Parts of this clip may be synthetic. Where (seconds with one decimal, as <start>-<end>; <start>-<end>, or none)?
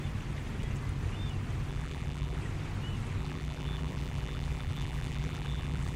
1.7-2.4; 3.2-6.0